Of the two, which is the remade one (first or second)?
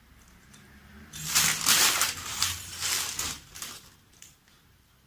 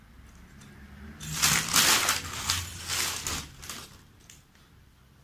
first